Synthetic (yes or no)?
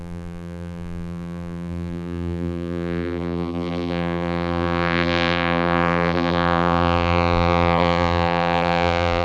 yes